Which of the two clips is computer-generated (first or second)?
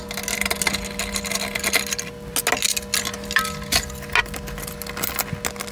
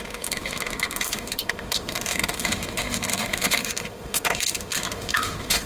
second